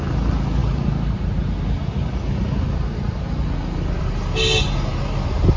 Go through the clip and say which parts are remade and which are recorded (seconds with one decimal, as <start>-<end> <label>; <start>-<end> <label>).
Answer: 0.0-5.6 recorded